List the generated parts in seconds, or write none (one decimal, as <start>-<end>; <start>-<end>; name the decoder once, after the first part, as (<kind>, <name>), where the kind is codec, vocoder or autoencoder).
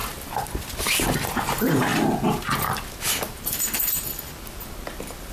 1.3-1.9 (vocoder, BigVGAN v2)